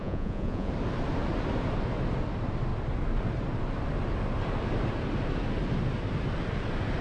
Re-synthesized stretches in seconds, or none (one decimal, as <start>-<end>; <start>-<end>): 0.0-0.7